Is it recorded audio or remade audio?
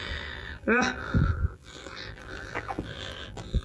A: remade